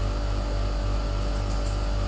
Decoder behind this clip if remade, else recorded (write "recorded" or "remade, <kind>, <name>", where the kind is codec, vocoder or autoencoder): recorded